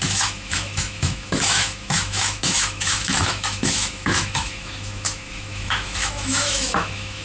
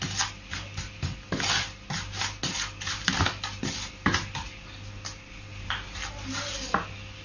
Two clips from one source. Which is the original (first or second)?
second